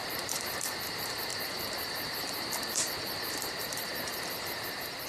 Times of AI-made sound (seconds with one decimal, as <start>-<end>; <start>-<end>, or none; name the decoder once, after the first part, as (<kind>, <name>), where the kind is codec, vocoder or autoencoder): 0.0-5.1 (vocoder, BigVGAN v2)

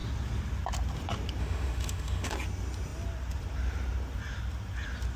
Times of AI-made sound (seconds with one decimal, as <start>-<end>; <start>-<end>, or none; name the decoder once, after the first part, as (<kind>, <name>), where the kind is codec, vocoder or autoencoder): 1.4-2.3 (autoencoder, DAC-VAE)

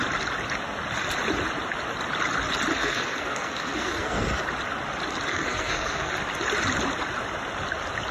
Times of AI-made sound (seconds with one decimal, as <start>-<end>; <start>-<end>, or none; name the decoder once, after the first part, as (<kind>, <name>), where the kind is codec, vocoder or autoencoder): 2.8-4.4 (codec, SNAC); 5.3-6.1

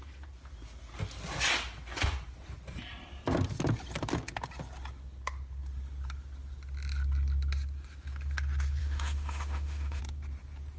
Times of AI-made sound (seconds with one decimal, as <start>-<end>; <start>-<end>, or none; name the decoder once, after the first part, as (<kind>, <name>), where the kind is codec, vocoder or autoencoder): 8.8-10.0 (autoencoder, DAC-VAE)

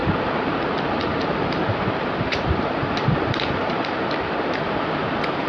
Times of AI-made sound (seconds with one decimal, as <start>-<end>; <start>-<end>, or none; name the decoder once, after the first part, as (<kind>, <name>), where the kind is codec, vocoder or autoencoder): 0.0-5.5 (vocoder, BigVGAN v2)

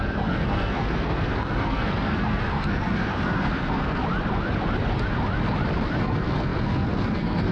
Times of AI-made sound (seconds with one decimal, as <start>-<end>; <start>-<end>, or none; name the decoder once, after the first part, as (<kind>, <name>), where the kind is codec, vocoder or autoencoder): 0.0-4.0 (codec, SNAC); 6.0-7.5